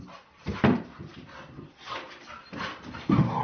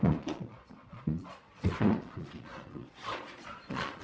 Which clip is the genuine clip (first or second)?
first